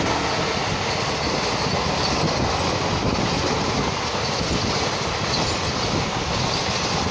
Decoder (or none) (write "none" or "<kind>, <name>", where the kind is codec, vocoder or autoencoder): none